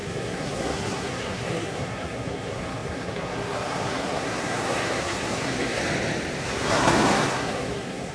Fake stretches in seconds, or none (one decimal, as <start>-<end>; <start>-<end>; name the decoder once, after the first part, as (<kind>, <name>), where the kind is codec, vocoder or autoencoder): 0.0-5.8 (codec, SNAC); 6.4-8.1